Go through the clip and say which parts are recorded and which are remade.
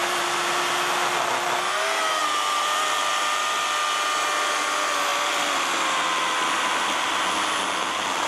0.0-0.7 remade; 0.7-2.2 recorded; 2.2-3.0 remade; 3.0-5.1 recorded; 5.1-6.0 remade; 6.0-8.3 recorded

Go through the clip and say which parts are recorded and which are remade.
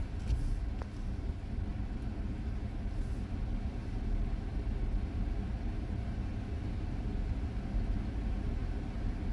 0.0-9.3 recorded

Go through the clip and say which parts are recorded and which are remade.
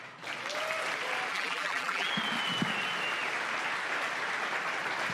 0.0-1.3 recorded; 1.3-2.1 remade; 2.1-5.1 recorded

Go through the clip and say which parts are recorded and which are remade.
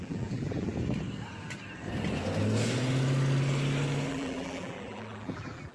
0.0-0.7 remade; 0.7-4.1 recorded; 4.1-5.7 remade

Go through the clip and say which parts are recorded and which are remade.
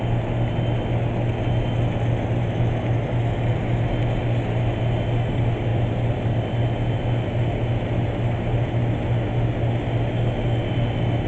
0.0-5.7 recorded; 5.7-7.0 remade; 7.0-11.3 recorded